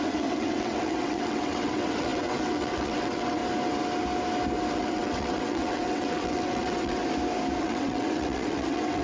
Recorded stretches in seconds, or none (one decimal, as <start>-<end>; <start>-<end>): 3.4-4.7; 7.0-7.6